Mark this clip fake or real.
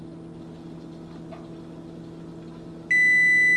real